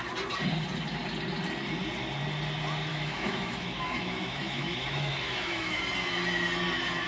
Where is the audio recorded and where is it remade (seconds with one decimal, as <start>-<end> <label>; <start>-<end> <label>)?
0.0-2.9 recorded; 2.9-5.8 remade; 5.8-7.1 recorded